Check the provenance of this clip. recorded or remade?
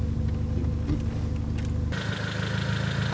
recorded